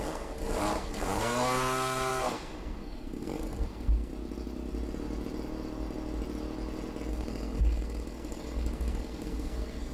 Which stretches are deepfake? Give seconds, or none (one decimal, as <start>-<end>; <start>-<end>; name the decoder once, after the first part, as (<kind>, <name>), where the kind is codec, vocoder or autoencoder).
0.0-4.1 (codec, SNAC); 7.1-9.9

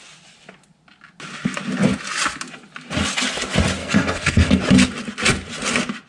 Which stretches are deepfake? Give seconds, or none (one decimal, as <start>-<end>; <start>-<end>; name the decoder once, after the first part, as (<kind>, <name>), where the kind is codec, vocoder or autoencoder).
3.8-4.6 (codec, SNAC)

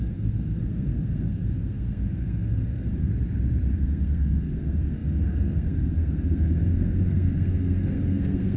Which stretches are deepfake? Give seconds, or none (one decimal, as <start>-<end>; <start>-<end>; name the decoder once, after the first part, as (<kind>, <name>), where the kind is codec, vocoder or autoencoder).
0.0-3.1 (codec, SNAC); 3.7-8.6

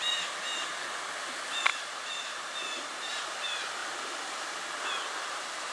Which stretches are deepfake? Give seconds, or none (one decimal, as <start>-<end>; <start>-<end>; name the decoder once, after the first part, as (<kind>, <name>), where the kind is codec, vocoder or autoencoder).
none

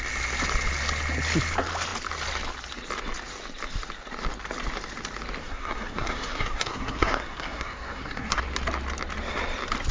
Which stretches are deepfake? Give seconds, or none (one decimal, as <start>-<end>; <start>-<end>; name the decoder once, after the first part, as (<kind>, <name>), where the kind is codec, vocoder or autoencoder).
5.4-8.4 (codec, SNAC)

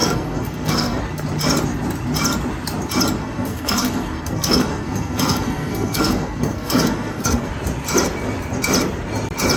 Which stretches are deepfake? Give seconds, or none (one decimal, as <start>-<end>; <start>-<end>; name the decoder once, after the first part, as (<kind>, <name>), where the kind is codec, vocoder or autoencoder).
0.0-1.0 (codec, SNAC); 3.2-7.5

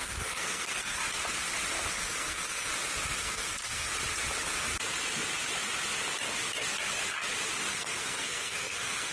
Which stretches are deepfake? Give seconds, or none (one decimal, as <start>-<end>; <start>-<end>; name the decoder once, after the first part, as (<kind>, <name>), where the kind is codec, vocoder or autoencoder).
0.0-1.0 (codec, SNAC); 1.9-2.7; 3.2-3.9; 7.7-9.1